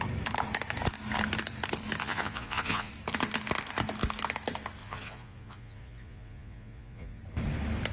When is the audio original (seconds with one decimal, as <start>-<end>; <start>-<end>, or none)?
0.0-2.0; 2.9-4.8; 7.2-7.9